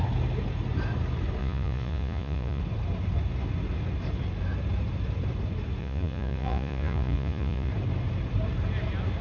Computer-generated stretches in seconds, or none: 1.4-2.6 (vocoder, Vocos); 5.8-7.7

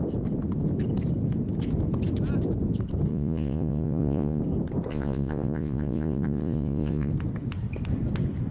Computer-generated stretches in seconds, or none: 3.1-4.4 (vocoder, Vocos); 4.9-7.1

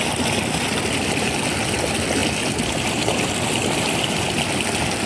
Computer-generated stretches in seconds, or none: none

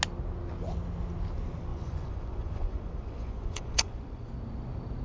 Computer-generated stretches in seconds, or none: 1.7-4.3 (vocoder, Vocos)

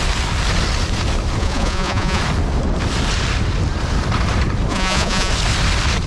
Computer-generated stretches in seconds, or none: 1.4-2.2 (vocoder, Vocos); 4.7-5.3